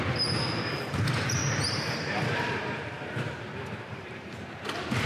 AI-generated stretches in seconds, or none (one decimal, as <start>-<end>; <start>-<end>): 1.4-4.5